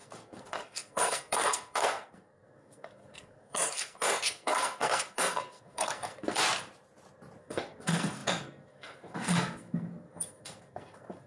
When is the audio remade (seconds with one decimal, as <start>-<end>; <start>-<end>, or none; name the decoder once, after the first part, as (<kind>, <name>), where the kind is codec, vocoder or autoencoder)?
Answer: 0.0-6.4 (codec, SNAC); 7.4-11.3